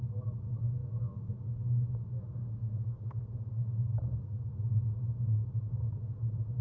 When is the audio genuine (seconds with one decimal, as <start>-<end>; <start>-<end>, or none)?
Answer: 0.0-2.4; 4.5-5.7